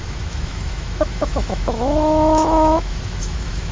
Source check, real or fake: fake